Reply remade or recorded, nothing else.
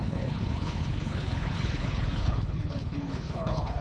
remade